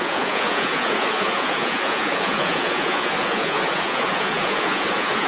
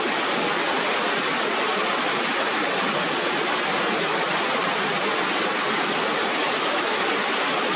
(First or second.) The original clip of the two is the second